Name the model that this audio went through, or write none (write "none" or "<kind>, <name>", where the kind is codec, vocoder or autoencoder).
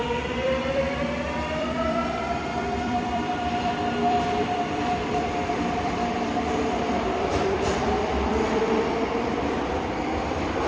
vocoder, BigVGAN v2